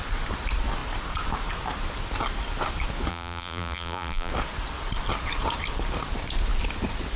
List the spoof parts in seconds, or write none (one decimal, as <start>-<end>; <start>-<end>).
3.1-4.3